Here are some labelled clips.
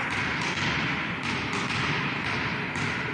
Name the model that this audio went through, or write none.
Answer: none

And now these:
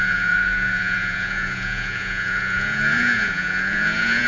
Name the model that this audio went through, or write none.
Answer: vocoder, Vocos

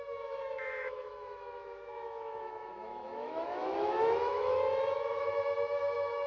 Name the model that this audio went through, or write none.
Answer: autoencoder, DAC-VAE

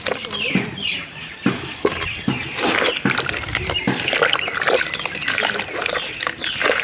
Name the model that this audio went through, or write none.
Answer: none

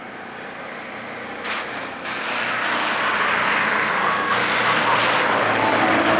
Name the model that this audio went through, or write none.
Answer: none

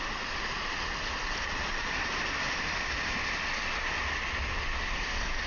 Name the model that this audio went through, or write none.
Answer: none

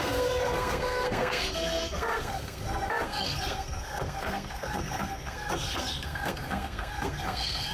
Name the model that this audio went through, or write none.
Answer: codec, SNAC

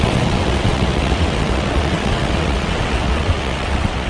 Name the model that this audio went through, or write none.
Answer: vocoder, WaveNeXt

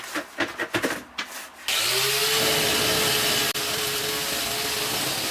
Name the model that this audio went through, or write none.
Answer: none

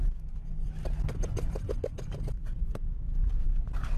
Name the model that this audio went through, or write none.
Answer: none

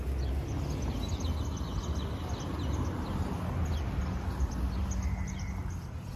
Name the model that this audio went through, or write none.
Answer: none